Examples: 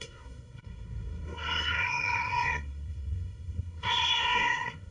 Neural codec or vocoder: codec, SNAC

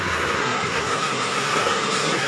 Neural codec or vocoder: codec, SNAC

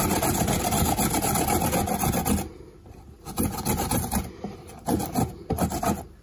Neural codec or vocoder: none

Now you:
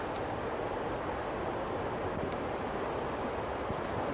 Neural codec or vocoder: none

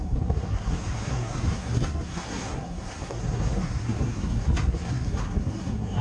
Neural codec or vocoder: codec, SNAC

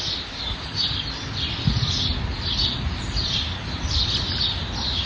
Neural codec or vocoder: none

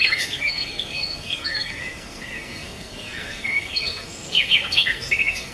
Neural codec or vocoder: codec, SNAC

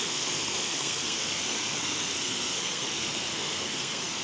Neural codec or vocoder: codec, SNAC